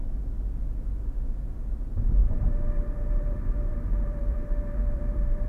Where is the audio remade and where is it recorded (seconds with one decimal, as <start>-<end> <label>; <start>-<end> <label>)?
0.0-2.2 recorded; 2.2-5.5 remade

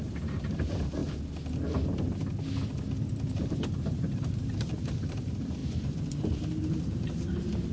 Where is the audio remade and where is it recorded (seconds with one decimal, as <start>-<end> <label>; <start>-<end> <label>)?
0.0-1.0 remade; 1.0-3.0 recorded; 3.0-7.7 remade

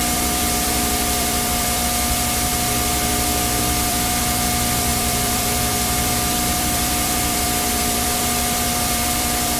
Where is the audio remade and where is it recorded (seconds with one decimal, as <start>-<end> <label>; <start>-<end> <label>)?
0.0-2.5 remade; 2.5-3.1 recorded; 3.1-9.6 remade

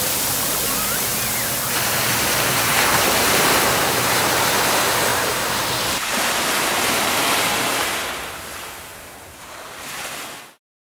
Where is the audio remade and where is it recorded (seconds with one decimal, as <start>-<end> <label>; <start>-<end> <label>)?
0.0-2.5 recorded; 2.5-4.5 remade; 4.5-5.1 recorded; 5.1-8.4 remade; 8.4-8.9 recorded; 8.9-10.2 remade; 10.2-11.0 recorded

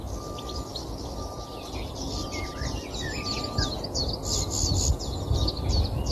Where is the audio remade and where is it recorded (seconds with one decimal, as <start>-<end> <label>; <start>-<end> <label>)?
0.0-6.1 recorded